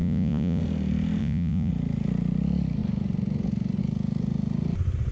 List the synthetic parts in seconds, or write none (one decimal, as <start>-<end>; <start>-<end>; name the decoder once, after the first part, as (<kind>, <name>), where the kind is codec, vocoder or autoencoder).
0.0-0.6 (vocoder, Vocos); 1.2-1.7